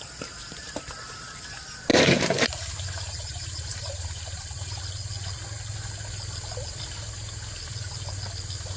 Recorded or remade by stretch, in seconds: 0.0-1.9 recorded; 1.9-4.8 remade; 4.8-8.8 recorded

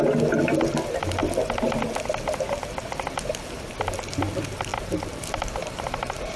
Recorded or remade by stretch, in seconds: 0.0-4.7 recorded; 4.7-6.4 remade

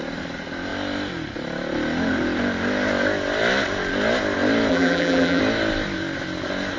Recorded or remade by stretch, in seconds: 0.0-4.7 recorded; 4.7-5.4 remade; 5.4-6.8 recorded

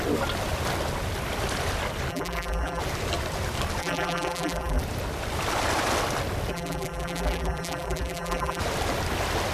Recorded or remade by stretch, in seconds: 0.0-2.1 recorded; 2.1-2.8 remade; 2.8-3.8 recorded; 3.8-4.8 remade; 4.8-6.5 recorded; 6.5-8.6 remade; 8.6-9.5 recorded